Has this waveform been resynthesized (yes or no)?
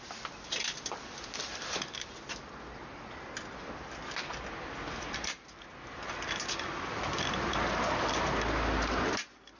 no